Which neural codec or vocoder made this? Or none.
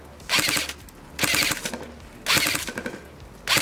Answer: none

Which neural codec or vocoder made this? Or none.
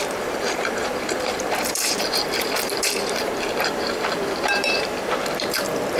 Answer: vocoder, BigVGAN v2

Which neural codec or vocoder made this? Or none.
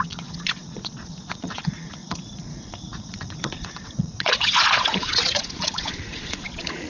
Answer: vocoder, Vocos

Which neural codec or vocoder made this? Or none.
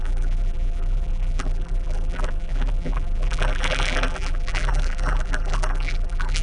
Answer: vocoder, BigVGAN v2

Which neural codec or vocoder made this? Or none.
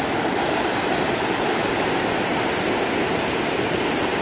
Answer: none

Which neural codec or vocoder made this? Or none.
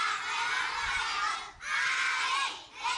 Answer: none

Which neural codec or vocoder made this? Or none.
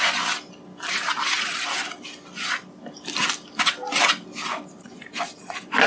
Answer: none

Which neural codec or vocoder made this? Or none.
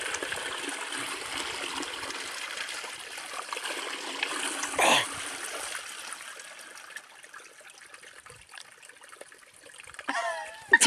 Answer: none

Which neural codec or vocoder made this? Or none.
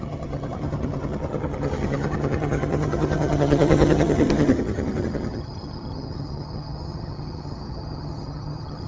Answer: vocoder, HiFi-GAN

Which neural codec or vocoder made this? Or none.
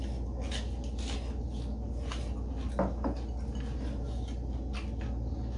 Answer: none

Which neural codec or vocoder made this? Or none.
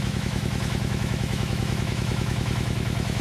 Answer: autoencoder, DAC-VAE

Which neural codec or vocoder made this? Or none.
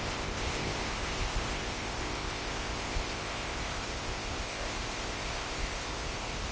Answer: codec, ZipCodec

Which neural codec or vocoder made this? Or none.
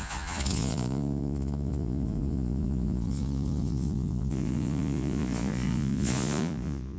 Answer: vocoder, Vocos